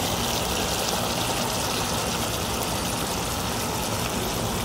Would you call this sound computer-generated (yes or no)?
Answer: no